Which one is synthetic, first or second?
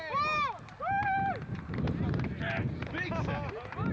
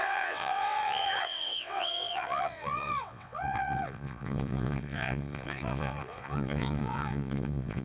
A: second